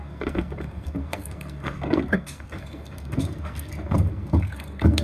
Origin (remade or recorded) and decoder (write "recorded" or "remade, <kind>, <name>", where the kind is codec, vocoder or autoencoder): remade, codec, SNAC